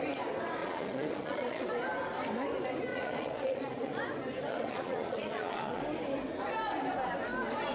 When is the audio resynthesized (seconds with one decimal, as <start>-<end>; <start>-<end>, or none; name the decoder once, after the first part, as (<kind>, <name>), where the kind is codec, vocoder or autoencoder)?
0.6-1.7 (vocoder, Vocos); 2.9-4.0; 4.5-5.8

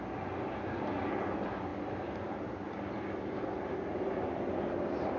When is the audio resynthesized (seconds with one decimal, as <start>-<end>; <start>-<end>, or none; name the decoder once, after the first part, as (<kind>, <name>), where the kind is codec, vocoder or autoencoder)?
none